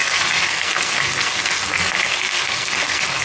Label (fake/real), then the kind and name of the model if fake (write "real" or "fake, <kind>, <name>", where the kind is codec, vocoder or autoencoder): fake, codec, SNAC